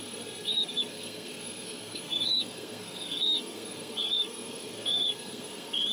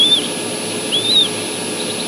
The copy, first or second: first